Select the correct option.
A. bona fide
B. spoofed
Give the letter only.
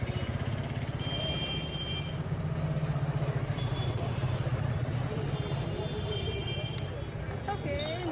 A